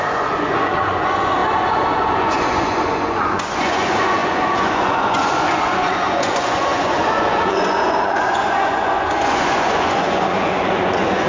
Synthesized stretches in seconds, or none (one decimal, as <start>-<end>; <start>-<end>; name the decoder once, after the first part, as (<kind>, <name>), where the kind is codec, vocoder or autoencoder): 0.0-11.3 (vocoder, Vocos)